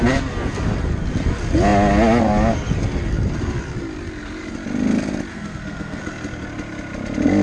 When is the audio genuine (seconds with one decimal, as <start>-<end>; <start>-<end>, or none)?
0.0-5.3; 6.0-7.4

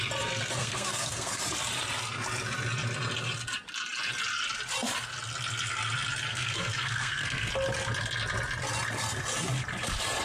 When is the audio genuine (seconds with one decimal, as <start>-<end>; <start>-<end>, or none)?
0.0-0.6; 1.4-6.3; 7.5-10.2

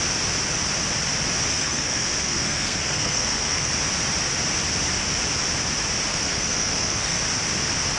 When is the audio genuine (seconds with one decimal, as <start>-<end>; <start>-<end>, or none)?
0.0-1.5; 3.7-6.1; 7.2-8.0

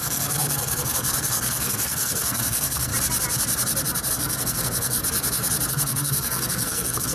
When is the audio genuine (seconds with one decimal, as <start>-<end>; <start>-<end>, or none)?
2.9-4.1; 5.0-5.7

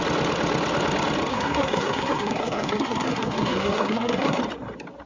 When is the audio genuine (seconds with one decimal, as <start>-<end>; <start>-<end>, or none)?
0.0-1.3; 4.4-5.1

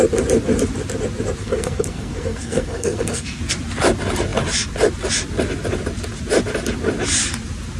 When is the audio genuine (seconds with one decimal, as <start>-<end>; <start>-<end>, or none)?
0.0-1.4; 3.4-7.8

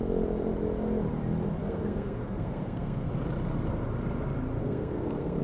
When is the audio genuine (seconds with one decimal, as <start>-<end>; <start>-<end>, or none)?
0.0-1.6; 3.1-4.6